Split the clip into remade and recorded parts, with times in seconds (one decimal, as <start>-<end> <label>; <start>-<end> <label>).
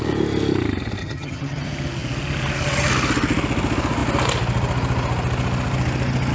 0.0-1.0 recorded; 1.0-1.6 remade; 1.6-6.3 recorded